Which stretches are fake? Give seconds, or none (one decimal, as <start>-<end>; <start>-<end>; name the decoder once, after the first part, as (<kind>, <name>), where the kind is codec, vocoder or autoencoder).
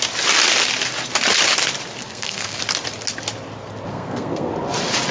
2.0-2.6 (codec, SNAC); 3.9-4.5